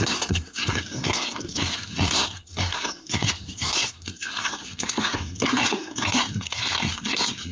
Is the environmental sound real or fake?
fake